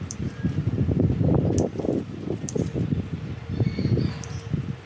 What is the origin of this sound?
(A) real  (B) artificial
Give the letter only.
A